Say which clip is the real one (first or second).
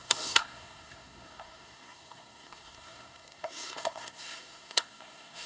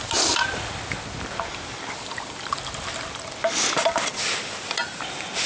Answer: second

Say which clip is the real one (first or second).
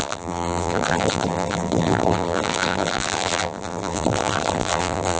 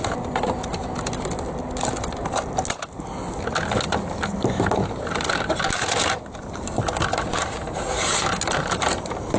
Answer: second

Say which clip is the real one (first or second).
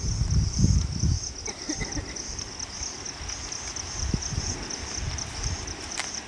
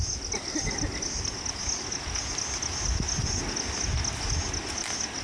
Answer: second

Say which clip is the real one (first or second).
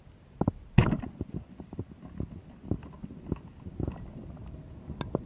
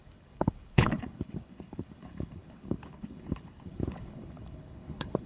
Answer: first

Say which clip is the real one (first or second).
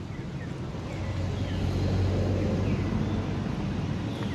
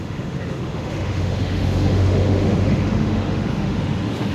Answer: first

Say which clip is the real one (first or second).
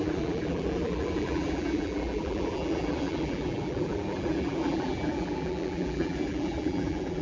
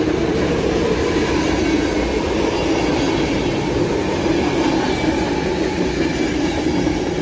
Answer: second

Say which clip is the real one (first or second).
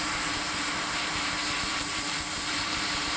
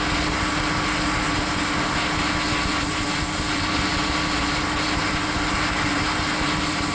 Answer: second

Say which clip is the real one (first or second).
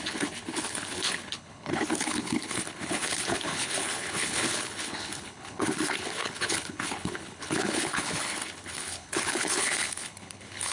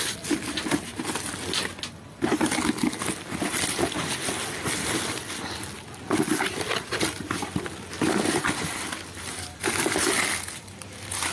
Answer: second